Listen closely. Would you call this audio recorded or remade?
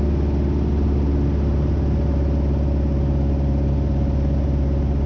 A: recorded